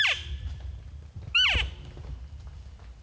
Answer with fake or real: real